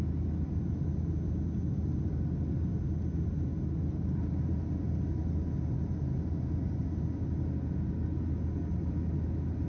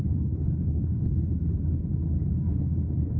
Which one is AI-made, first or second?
second